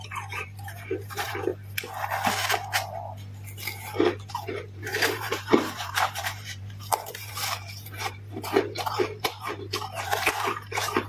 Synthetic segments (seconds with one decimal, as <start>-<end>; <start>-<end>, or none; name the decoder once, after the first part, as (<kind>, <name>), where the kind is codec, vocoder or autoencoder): 0.0-1.5 (vocoder, BigVGAN v2); 4.3-11.1

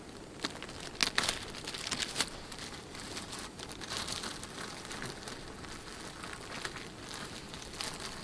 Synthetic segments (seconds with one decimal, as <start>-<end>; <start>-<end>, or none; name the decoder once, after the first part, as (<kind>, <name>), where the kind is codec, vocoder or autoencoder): none

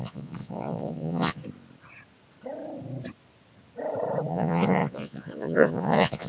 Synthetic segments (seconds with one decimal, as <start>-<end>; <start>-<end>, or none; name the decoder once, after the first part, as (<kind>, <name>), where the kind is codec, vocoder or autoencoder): 0.0-1.4 (vocoder, Vocos); 4.3-6.3

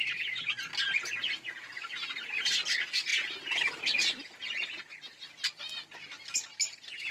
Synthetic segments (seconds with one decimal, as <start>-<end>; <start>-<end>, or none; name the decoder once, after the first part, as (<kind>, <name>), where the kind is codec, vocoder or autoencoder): none